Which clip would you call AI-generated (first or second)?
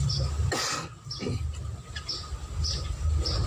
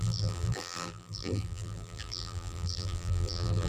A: second